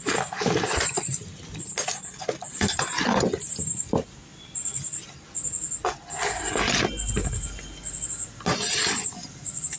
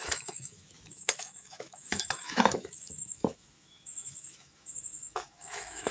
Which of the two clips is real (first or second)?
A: first